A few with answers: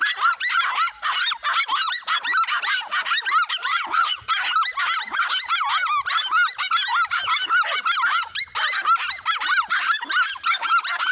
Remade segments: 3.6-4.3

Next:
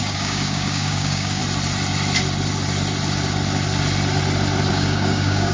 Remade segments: 0.0-1.4; 4.7-5.5